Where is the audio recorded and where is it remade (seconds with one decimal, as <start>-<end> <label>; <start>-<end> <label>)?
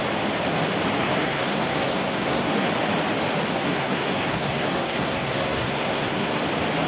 0.0-1.0 recorded; 1.0-2.7 remade; 2.7-3.5 recorded; 3.5-6.4 remade; 6.4-6.9 recorded